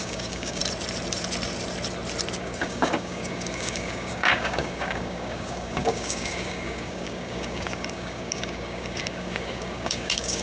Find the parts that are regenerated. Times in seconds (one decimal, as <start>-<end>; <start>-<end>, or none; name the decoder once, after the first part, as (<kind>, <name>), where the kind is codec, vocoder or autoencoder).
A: 0.0-0.6 (codec, DAC); 2.4-10.4